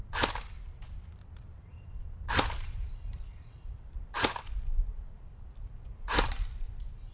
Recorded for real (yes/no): no